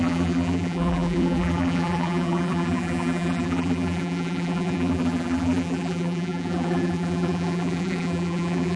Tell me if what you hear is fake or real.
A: fake